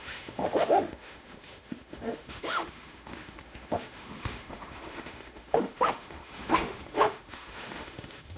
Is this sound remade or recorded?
remade